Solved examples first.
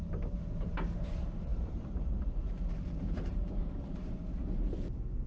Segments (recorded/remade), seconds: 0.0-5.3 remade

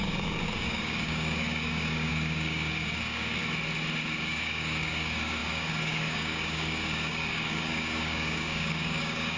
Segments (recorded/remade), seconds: 0.0-3.4 remade; 3.4-4.2 recorded; 4.2-9.4 remade

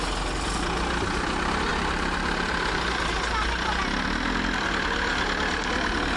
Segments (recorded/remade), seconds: 0.0-6.2 recorded

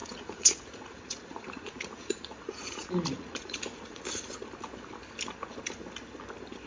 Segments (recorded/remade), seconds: 0.0-4.0 remade; 4.0-6.7 recorded

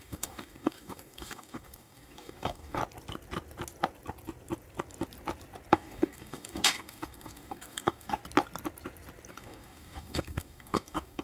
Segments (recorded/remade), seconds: 0.0-2.8 remade; 2.8-5.7 recorded; 5.7-8.2 remade; 8.2-9.3 recorded; 9.3-11.2 remade

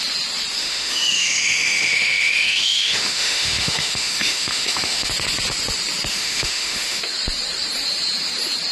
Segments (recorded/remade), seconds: 0.0-0.6 recorded; 0.6-5.1 remade; 5.1-6.1 recorded; 6.1-7.0 remade; 7.0-8.7 recorded

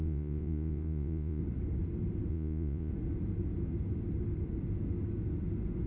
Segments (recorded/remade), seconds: 0.0-1.4 remade; 1.4-2.3 recorded; 2.3-2.9 remade; 2.9-5.9 recorded